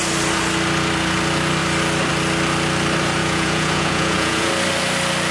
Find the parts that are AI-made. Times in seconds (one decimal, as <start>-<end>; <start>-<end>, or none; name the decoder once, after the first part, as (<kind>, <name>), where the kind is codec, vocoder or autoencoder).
3.2-4.5 (vocoder, Vocos)